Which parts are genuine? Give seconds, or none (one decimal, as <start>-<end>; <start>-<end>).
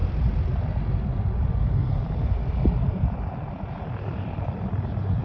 0.5-1.8